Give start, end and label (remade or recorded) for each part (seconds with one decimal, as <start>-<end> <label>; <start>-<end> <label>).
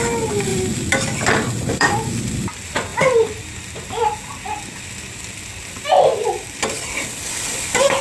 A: 0.0-0.5 recorded; 0.5-2.5 remade; 2.5-2.9 recorded; 2.9-4.0 remade; 4.0-6.1 recorded; 6.1-8.0 remade